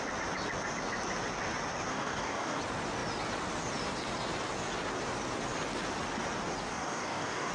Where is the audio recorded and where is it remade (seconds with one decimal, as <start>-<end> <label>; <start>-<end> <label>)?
0.0-1.9 recorded; 1.9-2.6 remade; 2.6-6.7 recorded; 6.7-7.5 remade